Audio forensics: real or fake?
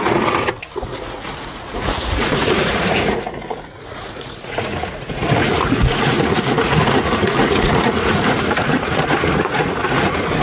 fake